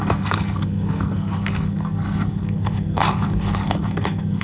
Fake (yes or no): yes